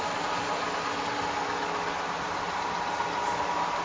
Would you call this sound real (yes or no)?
yes